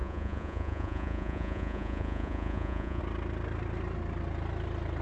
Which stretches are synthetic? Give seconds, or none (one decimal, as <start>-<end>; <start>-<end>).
0.0-3.0